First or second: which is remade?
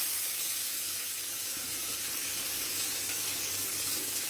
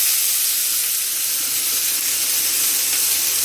first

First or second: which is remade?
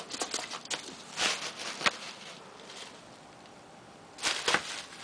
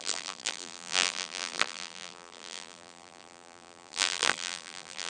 second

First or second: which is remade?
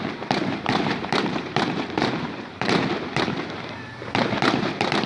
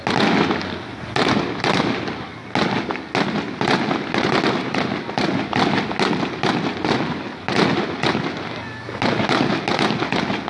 first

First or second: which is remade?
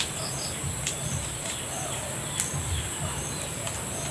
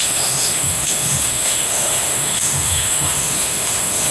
second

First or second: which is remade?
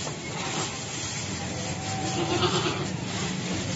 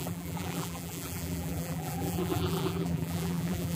second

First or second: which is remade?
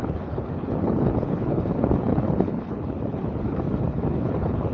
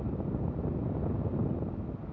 first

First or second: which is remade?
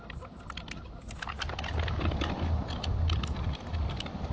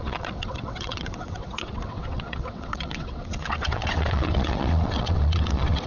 second